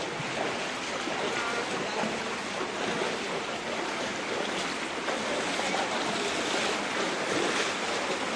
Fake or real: real